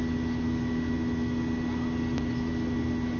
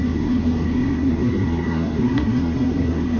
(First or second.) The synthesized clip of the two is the second